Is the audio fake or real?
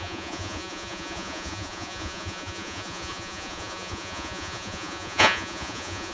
fake